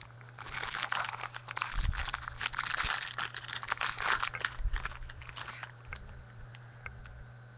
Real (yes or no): no